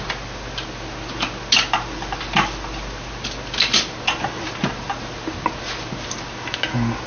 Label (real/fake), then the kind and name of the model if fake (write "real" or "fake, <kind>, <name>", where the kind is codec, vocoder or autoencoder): real